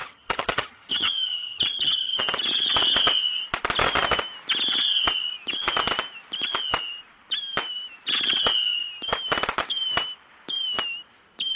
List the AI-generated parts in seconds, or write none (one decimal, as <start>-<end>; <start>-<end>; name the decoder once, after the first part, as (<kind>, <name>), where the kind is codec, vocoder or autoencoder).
0.0-2.2 (vocoder, HiFi-GAN)